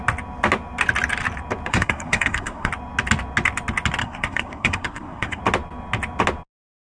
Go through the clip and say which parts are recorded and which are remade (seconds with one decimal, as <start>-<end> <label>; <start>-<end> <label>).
0.0-1.7 recorded; 1.7-2.7 remade; 2.7-4.0 recorded; 4.0-5.4 remade; 5.4-6.9 recorded